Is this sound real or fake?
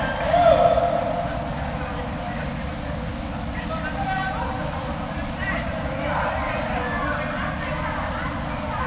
real